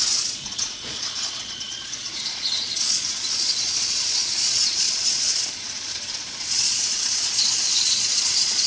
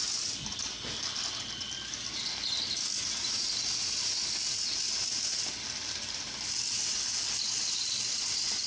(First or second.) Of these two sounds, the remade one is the first